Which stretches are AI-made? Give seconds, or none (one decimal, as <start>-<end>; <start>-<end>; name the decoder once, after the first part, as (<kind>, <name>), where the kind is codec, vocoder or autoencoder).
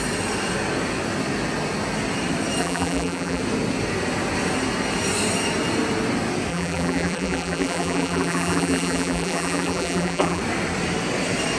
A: 2.6-3.4 (vocoder, BigVGAN v2); 6.5-10.4